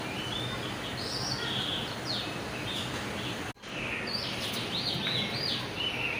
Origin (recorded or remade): recorded